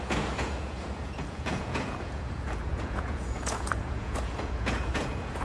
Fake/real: fake